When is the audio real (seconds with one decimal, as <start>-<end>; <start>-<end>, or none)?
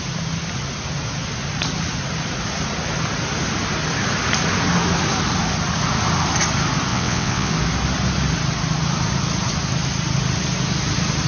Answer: 0.0-6.9; 7.5-11.3